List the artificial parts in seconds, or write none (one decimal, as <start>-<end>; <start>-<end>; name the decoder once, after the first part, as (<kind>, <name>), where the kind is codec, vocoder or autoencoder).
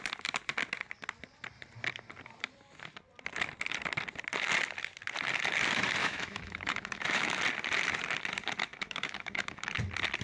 6.0-7.4 (autoencoder, DAC-VAE); 8.7-9.7